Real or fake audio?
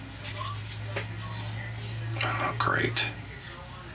real